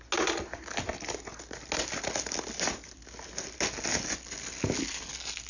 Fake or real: real